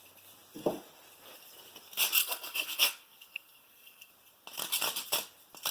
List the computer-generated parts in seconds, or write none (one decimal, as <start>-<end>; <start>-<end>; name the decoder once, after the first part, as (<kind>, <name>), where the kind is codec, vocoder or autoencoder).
2.2-4.1 (codec, SNAC)

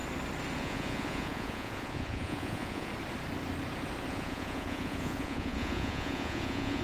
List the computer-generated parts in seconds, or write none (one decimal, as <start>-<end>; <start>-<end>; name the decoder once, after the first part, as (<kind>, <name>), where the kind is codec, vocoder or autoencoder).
0.6-2.9 (vocoder, Vocos); 4.1-6.8

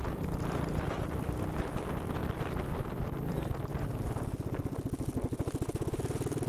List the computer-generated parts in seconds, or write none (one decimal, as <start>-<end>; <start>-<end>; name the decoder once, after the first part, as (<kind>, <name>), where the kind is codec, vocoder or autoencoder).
0.0-6.5 (vocoder, BigVGAN v2)

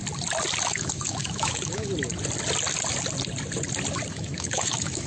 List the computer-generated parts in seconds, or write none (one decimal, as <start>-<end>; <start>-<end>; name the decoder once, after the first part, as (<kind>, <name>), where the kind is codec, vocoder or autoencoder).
0.6-1.9 (autoencoder, DAC-VAE); 4.1-5.1